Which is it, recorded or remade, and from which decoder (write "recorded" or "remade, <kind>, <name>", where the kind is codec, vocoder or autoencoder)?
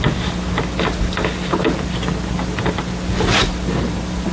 recorded